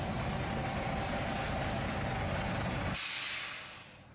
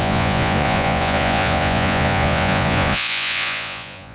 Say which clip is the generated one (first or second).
second